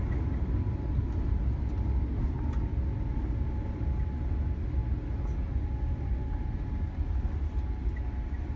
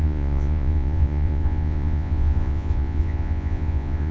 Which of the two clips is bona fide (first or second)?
first